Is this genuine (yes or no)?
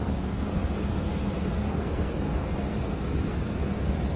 no